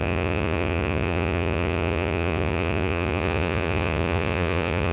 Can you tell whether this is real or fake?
fake